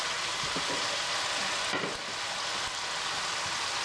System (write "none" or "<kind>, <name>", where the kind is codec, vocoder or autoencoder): none